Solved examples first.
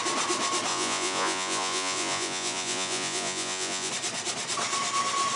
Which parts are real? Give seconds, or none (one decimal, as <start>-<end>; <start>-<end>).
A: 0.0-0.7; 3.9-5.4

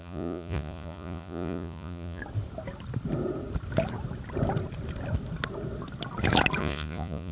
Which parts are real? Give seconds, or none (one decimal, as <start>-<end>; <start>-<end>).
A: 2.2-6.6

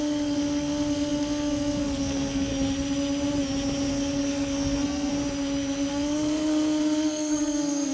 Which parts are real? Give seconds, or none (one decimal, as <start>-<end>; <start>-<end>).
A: 2.5-3.9; 5.1-5.9

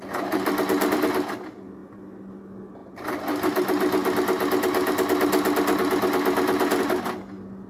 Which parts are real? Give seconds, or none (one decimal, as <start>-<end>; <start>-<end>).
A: 0.0-7.7